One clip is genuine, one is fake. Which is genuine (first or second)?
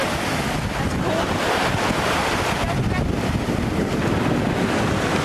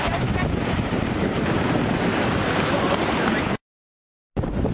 first